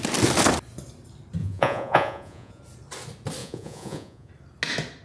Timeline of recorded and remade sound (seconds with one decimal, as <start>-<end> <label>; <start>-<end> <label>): 0.0-1.4 recorded; 1.4-2.6 remade; 2.6-3.4 recorded; 3.4-4.3 remade; 4.3-5.0 recorded